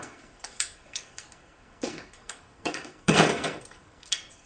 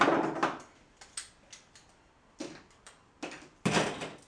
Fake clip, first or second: first